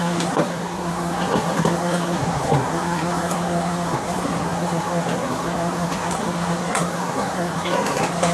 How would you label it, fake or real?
fake